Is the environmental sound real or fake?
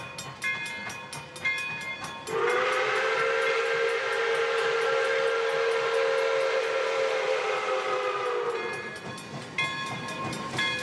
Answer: real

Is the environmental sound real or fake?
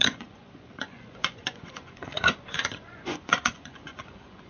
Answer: fake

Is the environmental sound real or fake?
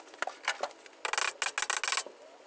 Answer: real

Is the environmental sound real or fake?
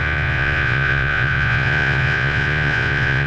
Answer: fake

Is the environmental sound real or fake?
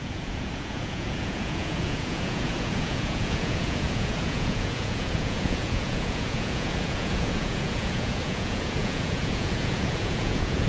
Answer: fake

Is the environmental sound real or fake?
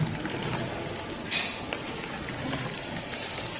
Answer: real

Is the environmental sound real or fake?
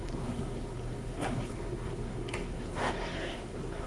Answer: fake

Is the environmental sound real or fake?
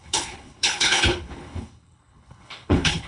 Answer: fake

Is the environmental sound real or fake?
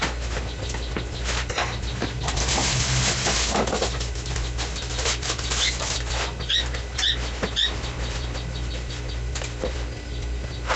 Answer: real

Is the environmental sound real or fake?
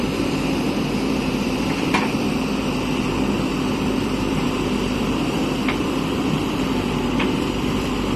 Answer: fake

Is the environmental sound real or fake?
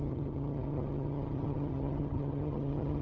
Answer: fake